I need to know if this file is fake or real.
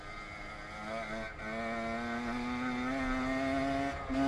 real